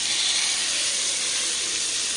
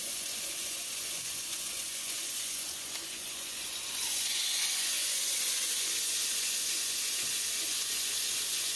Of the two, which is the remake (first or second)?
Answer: second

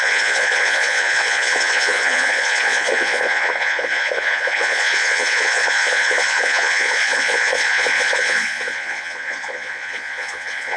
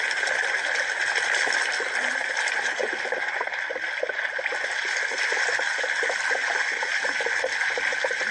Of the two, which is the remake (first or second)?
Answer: first